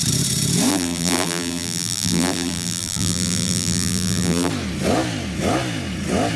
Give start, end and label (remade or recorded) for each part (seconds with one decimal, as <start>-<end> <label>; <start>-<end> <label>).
0.0-0.7 recorded; 0.7-4.5 remade; 4.5-6.4 recorded